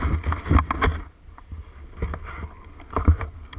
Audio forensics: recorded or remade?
recorded